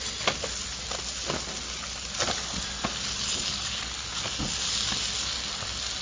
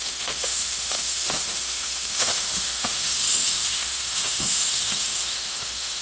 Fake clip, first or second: second